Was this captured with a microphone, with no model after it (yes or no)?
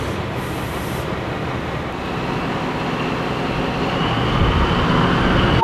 yes